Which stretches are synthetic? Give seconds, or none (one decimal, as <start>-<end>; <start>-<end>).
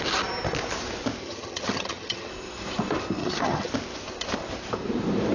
1.2-2.3; 3.2-3.7